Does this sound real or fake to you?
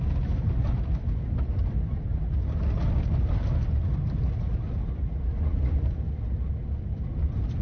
real